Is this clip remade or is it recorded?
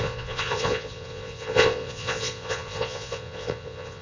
remade